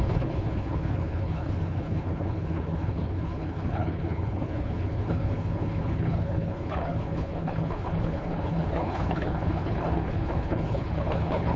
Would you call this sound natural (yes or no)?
no